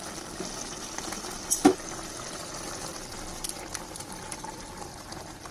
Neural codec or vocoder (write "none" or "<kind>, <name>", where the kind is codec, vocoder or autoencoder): none